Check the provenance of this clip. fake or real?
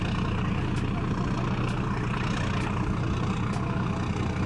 real